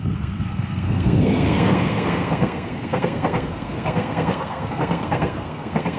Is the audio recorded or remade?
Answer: remade